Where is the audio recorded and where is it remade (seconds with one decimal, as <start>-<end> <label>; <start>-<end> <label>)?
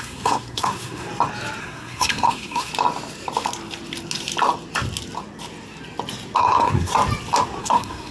0.0-1.1 remade; 1.1-1.6 recorded; 1.6-2.7 remade; 2.7-6.4 recorded; 6.4-6.9 remade; 6.9-7.6 recorded; 7.6-8.1 remade